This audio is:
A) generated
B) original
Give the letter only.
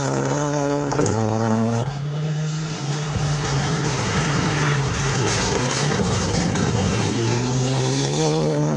A